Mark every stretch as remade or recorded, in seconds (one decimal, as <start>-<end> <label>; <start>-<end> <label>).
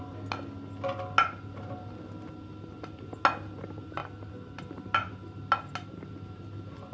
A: 0.0-6.9 recorded